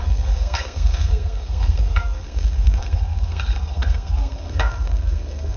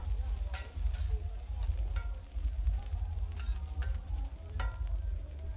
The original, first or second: second